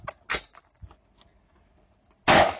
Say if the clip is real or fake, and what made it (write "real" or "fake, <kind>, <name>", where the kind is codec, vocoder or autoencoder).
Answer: real